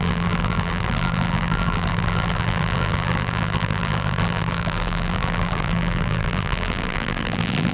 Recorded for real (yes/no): no